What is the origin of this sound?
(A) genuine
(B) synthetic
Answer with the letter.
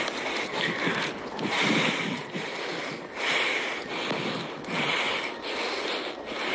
A